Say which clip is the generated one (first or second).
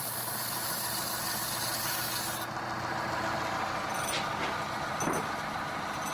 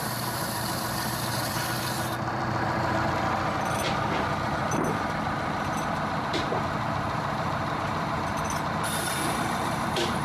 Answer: second